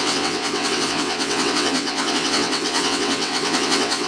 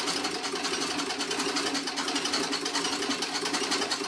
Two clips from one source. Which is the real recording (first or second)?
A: second